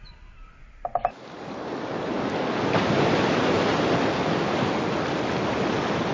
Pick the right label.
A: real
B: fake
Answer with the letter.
A